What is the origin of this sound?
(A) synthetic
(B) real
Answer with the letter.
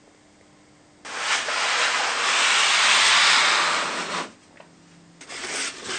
B